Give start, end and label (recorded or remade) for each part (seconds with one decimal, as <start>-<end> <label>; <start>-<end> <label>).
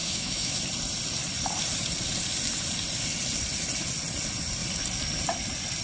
0.0-0.6 remade; 0.6-5.8 recorded